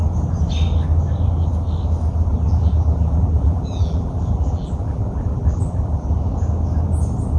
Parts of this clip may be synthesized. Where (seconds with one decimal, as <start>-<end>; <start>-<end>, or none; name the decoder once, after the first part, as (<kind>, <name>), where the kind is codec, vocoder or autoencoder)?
2.3-6.1 (vocoder, BigVGAN v2)